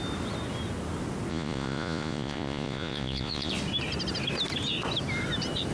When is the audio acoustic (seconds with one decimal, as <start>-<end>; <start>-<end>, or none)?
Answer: 0.0-1.3; 3.5-5.7

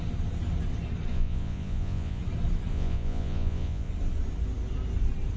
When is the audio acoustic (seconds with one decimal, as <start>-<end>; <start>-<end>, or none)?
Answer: 0.0-1.1; 2.2-2.7; 3.9-5.4

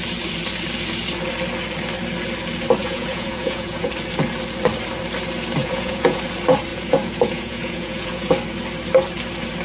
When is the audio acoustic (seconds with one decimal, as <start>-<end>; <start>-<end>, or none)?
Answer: 0.0-2.8; 3.9-5.6; 6.2-6.7; 8.3-9.6

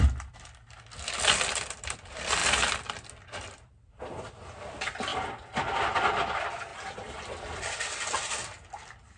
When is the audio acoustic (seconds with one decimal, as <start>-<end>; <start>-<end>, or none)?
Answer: 0.0-9.2

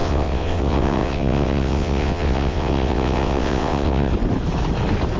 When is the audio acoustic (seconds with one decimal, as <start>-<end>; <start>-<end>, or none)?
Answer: 4.1-5.2